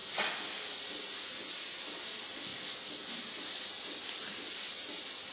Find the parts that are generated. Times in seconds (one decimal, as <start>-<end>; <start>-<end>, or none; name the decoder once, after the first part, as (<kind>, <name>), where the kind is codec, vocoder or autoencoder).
none